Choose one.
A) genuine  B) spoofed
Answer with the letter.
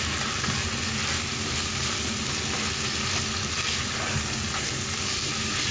A